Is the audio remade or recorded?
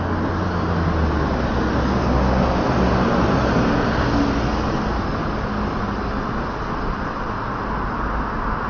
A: recorded